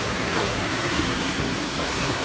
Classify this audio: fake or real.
fake